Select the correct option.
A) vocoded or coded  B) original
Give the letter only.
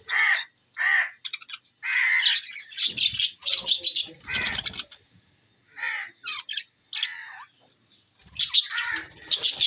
B